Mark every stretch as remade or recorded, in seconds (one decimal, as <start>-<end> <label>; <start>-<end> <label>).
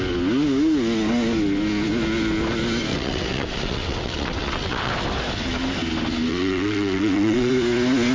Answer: 0.0-2.9 recorded; 2.9-4.9 remade; 4.9-6.3 recorded; 6.3-7.5 remade; 7.5-8.1 recorded